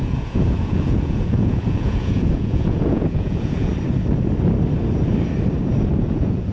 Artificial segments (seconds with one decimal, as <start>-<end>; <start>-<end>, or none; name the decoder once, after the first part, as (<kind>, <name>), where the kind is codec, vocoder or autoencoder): 0.0-3.7 (vocoder, Vocos); 6.0-6.5